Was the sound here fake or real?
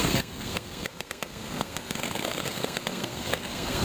fake